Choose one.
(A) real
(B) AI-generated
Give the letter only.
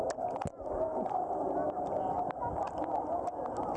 A